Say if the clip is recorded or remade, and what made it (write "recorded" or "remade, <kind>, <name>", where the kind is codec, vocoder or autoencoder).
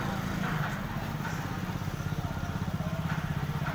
recorded